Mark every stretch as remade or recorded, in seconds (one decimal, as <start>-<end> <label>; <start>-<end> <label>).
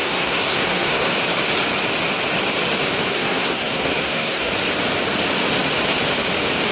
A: 0.0-1.1 remade; 1.1-3.1 recorded; 3.1-4.5 remade; 4.5-6.7 recorded